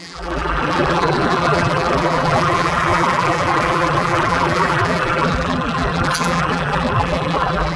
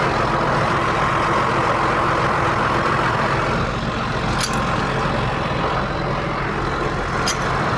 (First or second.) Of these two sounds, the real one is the second